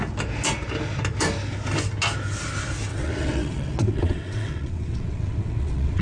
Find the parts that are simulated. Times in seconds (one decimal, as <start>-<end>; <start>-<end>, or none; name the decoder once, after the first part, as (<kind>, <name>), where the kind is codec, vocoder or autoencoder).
2.9-6.0 (vocoder, WaveNeXt)